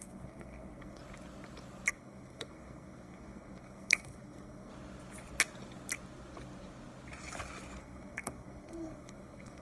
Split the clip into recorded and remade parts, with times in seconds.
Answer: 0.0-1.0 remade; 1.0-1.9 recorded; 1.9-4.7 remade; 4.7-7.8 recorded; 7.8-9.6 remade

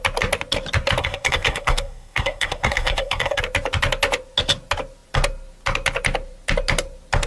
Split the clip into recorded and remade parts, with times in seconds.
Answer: 0.0-1.0 recorded; 1.0-3.4 remade; 3.4-7.3 recorded

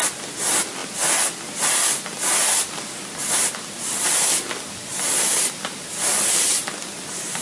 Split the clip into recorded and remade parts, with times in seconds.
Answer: 0.0-7.4 recorded

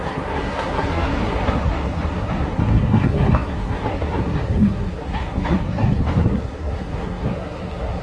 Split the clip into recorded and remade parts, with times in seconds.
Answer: 0.0-8.0 remade

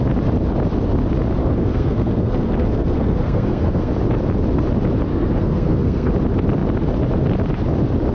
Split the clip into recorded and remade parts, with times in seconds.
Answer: 0.0-1.4 recorded; 1.4-3.9 remade; 3.9-5.1 recorded; 5.1-6.1 remade; 6.1-8.1 recorded

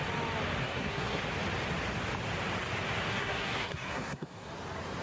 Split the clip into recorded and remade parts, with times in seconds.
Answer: 0.0-0.6 recorded; 0.6-1.2 remade; 1.2-3.1 recorded; 3.1-4.5 remade; 4.5-5.0 recorded

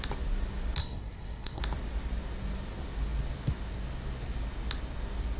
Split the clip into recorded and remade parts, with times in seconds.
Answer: 0.0-0.8 recorded; 0.8-1.6 remade; 1.6-5.4 recorded